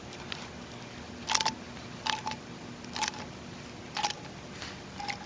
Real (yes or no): yes